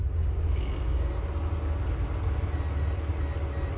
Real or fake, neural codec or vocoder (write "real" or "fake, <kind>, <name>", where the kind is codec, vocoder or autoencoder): real